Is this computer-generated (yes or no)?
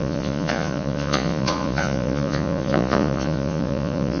yes